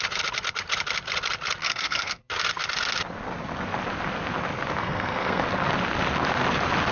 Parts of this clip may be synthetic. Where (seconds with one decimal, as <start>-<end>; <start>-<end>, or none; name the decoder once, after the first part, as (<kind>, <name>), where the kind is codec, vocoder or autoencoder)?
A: 1.6-2.2 (codec, SNAC); 4.8-5.4